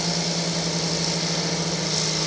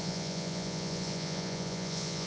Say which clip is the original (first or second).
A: first